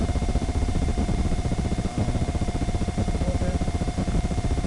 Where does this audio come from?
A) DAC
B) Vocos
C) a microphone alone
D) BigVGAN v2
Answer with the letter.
D